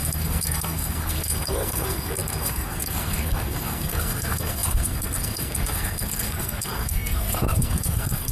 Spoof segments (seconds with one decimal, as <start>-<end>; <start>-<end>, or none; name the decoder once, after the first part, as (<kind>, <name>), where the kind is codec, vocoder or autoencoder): 0.0-8.3 (codec, SNAC)